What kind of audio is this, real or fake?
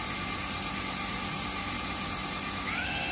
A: real